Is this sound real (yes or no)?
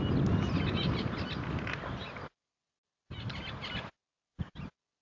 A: yes